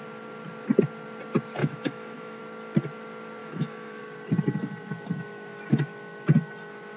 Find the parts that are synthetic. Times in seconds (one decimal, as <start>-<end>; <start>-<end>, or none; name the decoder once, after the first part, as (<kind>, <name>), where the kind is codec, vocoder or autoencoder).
1.6-2.4 (autoencoder, DAC-VAE); 3.4-4.0